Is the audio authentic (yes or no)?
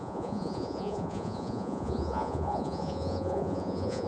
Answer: no